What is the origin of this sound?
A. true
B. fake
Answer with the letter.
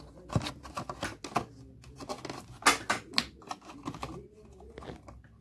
A